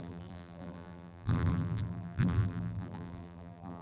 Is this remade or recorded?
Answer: remade